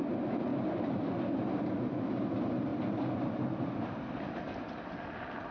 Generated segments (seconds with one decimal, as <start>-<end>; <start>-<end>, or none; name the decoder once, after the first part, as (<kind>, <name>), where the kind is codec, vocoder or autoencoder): 0.5-1.8 (vocoder, BigVGAN v2)